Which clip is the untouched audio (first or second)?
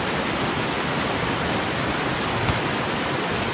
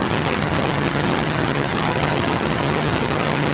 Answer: first